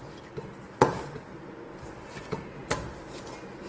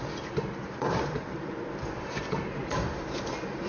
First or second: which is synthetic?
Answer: second